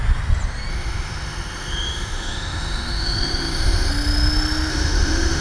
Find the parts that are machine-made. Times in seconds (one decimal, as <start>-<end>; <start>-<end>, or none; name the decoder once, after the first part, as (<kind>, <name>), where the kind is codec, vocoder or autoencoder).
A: 0.7-3.9 (autoencoder, DAC-VAE); 4.7-5.4

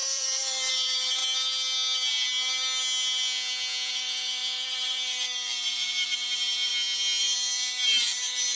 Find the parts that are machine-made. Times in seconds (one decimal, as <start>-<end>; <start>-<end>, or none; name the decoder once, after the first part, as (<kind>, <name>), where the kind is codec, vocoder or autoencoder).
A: 0.0-1.2 (vocoder, BigVGAN v2); 3.9-6.7; 7.2-8.6

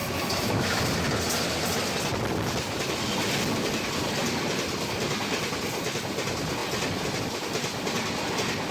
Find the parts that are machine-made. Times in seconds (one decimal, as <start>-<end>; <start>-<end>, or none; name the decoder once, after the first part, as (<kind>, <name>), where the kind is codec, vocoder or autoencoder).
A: 0.0-0.8 (autoencoder, DAC-VAE)

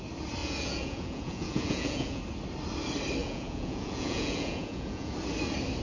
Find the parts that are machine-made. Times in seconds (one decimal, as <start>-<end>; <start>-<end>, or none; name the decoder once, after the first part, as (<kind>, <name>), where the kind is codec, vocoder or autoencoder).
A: 0.4-2.2 (vocoder, Vocos); 3.2-5.1

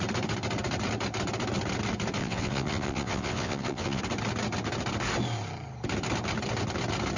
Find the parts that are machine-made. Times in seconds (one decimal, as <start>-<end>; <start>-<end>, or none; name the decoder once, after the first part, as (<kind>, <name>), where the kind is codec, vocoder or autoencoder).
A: 2.2-4.0 (vocoder, WaveNeXt)